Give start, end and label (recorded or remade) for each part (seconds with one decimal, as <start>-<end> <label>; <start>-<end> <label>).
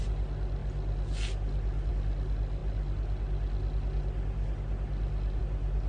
0.0-5.9 recorded